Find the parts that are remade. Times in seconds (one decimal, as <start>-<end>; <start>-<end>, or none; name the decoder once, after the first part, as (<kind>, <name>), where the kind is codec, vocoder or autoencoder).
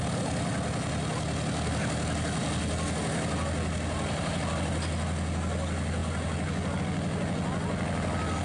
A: none